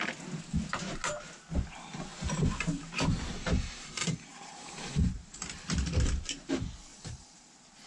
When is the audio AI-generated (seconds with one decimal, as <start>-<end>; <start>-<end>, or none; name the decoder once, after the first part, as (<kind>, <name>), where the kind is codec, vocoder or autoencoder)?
2.1-6.5 (vocoder, BigVGAN v2); 6.9-7.5